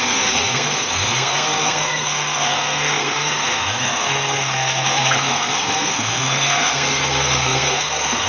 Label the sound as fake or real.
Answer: fake